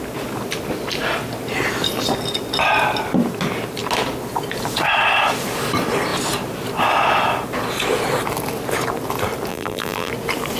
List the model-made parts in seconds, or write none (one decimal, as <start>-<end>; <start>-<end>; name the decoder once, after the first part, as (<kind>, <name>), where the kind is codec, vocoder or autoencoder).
9.5-10.1 (vocoder, BigVGAN v2)